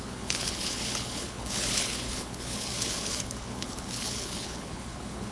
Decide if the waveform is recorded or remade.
remade